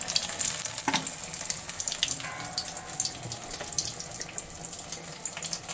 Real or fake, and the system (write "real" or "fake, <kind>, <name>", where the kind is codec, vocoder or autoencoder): real